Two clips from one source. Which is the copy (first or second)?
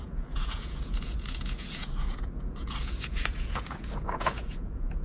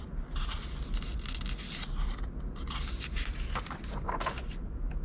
first